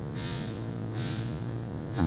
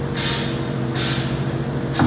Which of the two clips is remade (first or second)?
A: first